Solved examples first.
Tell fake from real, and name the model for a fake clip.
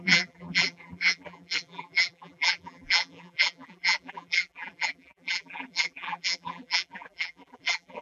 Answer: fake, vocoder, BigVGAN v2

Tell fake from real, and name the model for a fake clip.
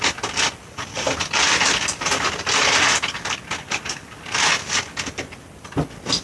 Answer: real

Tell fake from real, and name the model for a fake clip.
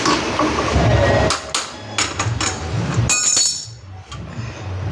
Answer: real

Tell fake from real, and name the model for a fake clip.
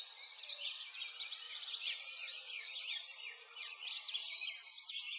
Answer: fake, vocoder, BigVGAN v2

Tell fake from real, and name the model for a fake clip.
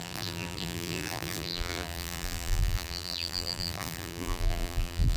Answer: fake, vocoder, BigVGAN v2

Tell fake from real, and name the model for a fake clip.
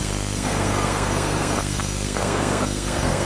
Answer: fake, codec, SNAC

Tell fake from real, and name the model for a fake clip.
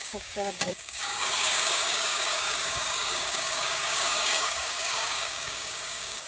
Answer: fake, codec, DAC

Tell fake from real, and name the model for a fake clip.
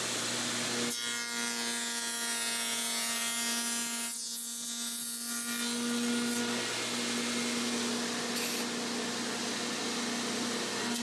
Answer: real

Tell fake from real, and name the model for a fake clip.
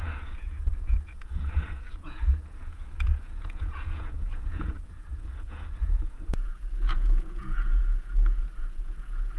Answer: fake, vocoder, Vocos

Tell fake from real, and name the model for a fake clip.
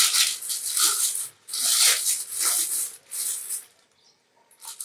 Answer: real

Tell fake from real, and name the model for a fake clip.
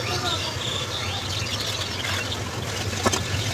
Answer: real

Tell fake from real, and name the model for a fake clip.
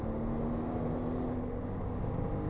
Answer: real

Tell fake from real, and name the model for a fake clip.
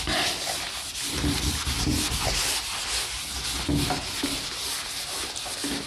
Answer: real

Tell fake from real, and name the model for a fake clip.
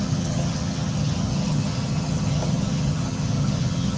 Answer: fake, vocoder, HiFi-GAN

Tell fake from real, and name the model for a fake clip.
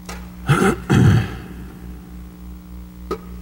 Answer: real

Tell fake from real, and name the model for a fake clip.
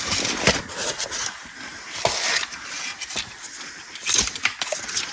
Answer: real